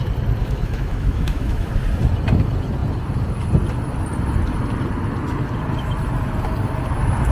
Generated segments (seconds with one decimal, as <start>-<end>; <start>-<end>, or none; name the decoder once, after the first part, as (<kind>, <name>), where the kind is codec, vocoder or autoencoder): 0.4-1.7 (autoencoder, DAC-VAE)